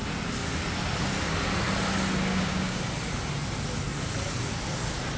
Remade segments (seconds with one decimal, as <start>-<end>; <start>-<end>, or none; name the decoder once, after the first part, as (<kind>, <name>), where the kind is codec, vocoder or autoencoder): 2.3-2.8 (codec, DAC)